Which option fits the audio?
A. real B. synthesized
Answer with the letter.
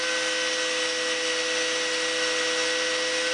A